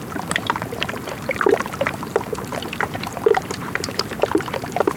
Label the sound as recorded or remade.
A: remade